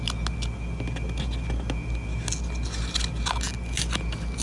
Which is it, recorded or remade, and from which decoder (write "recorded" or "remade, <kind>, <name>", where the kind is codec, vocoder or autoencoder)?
recorded